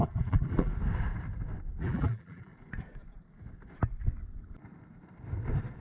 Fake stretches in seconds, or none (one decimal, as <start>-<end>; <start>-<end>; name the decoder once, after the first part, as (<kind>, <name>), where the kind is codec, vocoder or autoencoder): 0.0-0.7 (vocoder, BigVGAN v2); 1.8-2.5